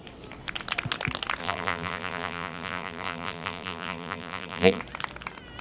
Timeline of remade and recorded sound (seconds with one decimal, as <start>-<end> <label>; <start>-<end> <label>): 0.0-1.4 recorded; 1.4-4.8 remade; 4.8-5.6 recorded